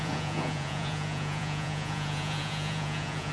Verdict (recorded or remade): remade